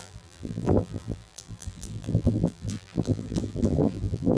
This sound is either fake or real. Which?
fake